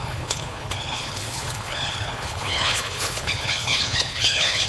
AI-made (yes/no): yes